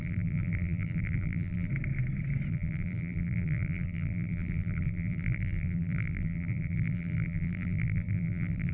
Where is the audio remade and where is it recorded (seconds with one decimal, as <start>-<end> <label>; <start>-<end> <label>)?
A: 0.0-1.7 remade; 1.7-2.5 recorded; 2.5-8.7 remade